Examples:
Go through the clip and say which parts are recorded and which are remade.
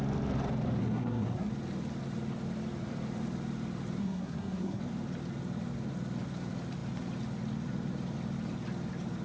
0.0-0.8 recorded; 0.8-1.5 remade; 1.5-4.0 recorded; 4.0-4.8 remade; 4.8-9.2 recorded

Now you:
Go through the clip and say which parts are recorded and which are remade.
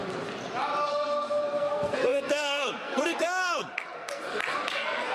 0.0-0.9 recorded; 0.9-5.1 remade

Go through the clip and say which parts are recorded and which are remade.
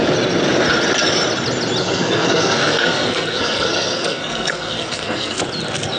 0.0-1.8 recorded; 1.8-5.4 remade; 5.4-6.0 recorded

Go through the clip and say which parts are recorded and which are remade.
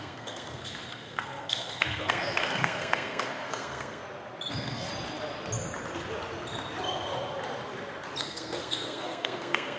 0.0-4.0 remade; 4.0-4.5 recorded; 4.5-4.9 remade; 4.9-8.2 recorded; 8.2-9.8 remade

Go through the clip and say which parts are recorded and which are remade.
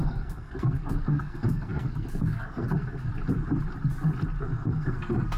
0.0-3.1 remade; 3.1-4.4 recorded; 4.4-5.4 remade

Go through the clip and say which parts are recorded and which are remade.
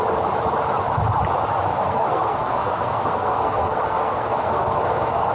0.0-1.7 recorded; 1.7-5.3 remade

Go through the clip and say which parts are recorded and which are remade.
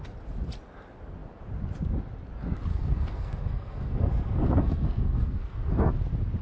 0.0-2.7 recorded; 2.7-5.9 remade; 5.9-6.4 recorded